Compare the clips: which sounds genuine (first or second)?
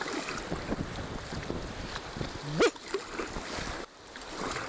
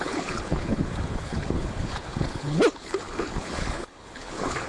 first